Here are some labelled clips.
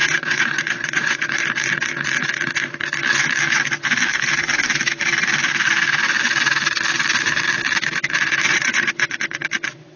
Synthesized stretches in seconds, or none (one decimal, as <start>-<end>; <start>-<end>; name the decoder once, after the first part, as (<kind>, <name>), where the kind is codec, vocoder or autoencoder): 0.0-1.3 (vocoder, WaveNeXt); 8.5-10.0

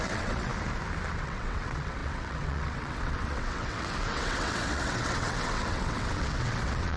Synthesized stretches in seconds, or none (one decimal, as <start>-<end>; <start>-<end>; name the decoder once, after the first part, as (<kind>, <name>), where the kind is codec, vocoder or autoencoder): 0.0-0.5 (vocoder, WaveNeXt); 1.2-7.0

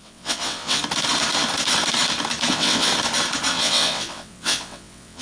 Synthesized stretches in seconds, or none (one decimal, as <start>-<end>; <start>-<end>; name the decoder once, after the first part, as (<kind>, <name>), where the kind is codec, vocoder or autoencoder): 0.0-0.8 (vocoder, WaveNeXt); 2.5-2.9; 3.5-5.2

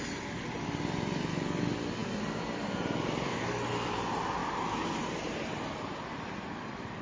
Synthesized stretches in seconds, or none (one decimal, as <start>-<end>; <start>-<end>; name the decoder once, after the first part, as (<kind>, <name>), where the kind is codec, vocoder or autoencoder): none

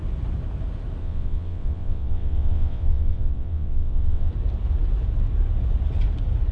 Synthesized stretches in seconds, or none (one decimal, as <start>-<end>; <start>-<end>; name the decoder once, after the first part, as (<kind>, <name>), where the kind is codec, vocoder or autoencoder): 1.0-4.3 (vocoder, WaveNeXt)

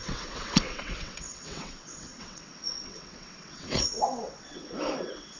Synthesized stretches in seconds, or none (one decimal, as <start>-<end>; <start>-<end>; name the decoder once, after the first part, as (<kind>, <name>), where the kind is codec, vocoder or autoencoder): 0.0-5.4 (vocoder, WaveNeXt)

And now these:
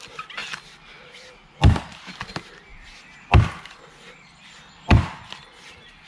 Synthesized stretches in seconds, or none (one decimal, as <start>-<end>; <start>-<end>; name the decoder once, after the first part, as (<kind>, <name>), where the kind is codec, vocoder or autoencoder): none

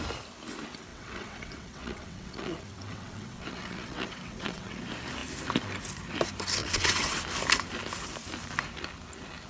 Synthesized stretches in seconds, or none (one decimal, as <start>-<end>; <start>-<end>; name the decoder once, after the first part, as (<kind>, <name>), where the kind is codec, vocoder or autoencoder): 0.9-4.8 (vocoder, WaveNeXt); 6.6-7.2